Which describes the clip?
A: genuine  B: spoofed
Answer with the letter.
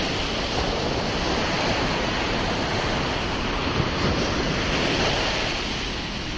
A